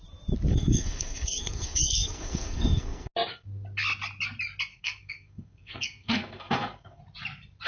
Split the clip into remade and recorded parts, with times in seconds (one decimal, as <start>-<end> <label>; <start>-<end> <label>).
0.0-0.5 recorded; 0.5-3.1 remade; 3.1-4.7 recorded; 4.7-7.0 remade; 7.0-7.7 recorded